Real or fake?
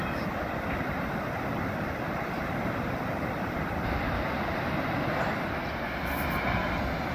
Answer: real